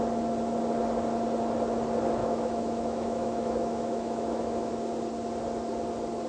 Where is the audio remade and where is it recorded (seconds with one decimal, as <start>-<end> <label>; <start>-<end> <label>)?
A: 0.0-2.2 recorded; 2.2-4.7 remade; 4.7-6.3 recorded